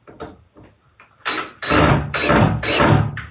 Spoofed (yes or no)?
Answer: no